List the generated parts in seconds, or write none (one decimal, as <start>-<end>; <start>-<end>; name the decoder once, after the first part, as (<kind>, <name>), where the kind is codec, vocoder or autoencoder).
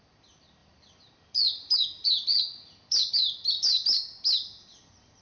0.6-1.8 (vocoder, BigVGAN v2); 2.3-3.1